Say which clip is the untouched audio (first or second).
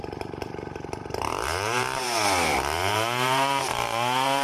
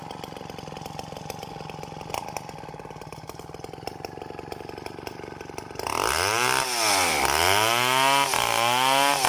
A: second